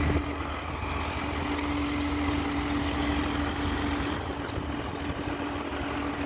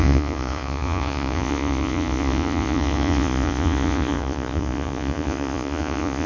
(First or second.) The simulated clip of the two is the second